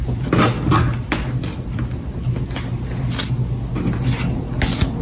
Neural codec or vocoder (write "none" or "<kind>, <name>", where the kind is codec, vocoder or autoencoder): none